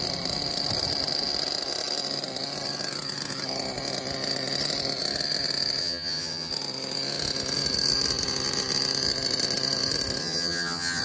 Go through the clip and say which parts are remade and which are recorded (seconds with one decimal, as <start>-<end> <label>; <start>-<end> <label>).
0.0-5.8 recorded; 5.8-6.5 remade; 6.5-10.2 recorded; 10.2-11.0 remade